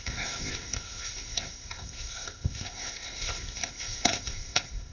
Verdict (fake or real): fake